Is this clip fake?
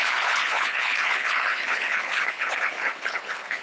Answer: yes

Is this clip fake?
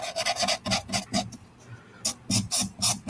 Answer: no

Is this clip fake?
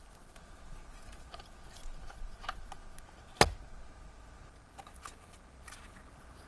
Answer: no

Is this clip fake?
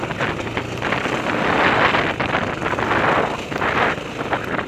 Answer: no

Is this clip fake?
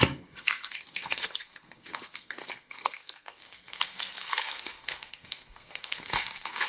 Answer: yes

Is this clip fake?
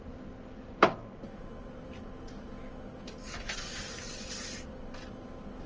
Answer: no